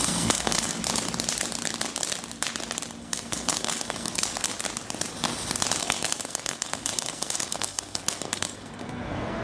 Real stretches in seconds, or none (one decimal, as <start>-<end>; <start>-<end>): 0.8-3.0; 4.5-5.8